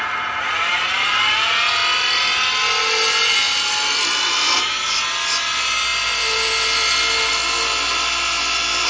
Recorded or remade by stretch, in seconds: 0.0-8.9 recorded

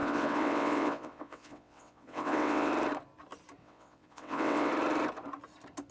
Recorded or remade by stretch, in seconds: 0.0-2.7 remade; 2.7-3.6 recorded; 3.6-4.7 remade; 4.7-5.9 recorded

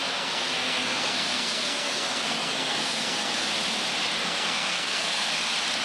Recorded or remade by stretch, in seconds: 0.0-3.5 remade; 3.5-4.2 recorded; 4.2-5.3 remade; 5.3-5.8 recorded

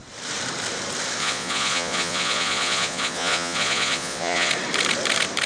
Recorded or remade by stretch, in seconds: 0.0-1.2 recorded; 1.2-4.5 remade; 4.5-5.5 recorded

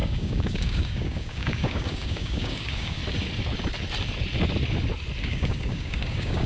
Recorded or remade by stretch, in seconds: 0.0-3.0 remade; 3.0-5.2 recorded; 5.2-6.5 remade

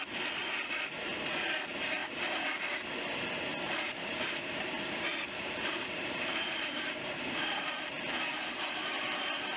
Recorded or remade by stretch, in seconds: 0.0-3.5 recorded; 3.5-7.9 remade; 7.9-9.6 recorded

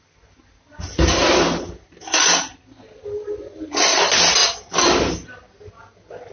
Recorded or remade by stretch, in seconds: 0.0-6.3 recorded